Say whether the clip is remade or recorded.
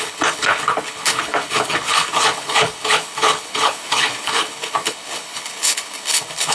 remade